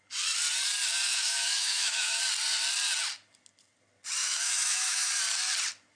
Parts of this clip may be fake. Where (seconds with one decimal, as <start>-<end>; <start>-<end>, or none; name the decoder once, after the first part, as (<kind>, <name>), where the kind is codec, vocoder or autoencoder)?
1.1-2.2 (autoencoder, DAC-VAE); 4.2-5.1